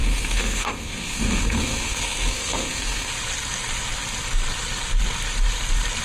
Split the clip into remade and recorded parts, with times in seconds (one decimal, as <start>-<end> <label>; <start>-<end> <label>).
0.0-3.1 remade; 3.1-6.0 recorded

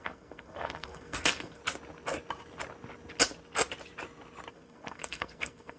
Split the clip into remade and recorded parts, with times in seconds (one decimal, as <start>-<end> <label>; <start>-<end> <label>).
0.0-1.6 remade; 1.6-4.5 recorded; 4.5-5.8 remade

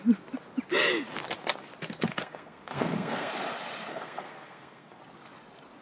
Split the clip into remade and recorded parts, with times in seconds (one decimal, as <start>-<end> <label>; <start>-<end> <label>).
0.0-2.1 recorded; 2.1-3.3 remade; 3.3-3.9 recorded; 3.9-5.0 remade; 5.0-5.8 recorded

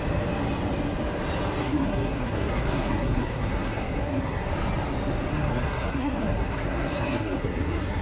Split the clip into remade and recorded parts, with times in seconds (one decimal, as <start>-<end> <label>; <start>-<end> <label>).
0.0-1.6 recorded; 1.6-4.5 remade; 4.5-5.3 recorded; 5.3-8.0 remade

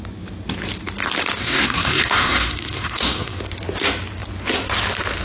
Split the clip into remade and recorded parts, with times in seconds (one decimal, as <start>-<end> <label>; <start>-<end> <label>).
0.0-1.4 recorded; 1.4-3.4 remade; 3.4-5.2 recorded

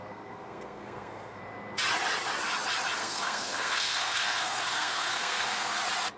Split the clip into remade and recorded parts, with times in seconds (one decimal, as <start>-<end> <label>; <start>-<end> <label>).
0.0-1.4 remade; 1.4-3.0 recorded; 3.0-5.8 remade; 5.8-6.2 recorded

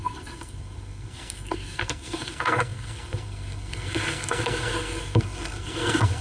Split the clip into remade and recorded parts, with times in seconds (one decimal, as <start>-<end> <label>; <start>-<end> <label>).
0.0-6.2 remade

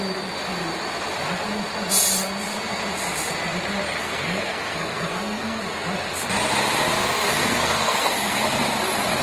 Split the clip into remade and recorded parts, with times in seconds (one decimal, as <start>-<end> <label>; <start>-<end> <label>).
0.0-4.0 recorded; 4.0-5.6 remade; 5.6-7.3 recorded; 7.3-8.6 remade; 8.6-9.2 recorded